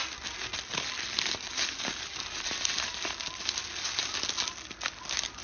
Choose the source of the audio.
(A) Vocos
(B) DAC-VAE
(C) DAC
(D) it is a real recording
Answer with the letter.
D